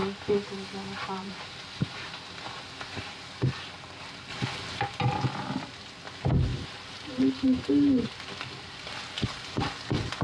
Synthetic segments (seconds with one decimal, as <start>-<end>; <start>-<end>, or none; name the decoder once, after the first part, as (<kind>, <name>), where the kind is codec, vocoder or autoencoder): 1.0-2.1 (vocoder, BigVGAN v2); 4.3-4.8; 6.5-8.3